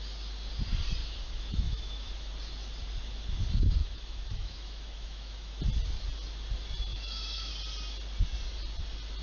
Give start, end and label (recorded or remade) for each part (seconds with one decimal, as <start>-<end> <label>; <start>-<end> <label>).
0.0-1.0 recorded; 1.0-2.3 remade; 2.3-3.8 recorded; 3.8-5.6 remade; 5.6-6.9 recorded; 6.9-7.5 remade; 7.5-9.2 recorded